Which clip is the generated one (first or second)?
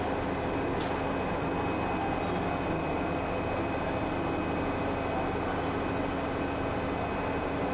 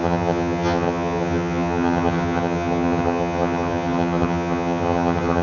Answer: second